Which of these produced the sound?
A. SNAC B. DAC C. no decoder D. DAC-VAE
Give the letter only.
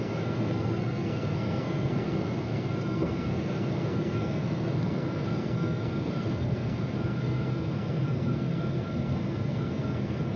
A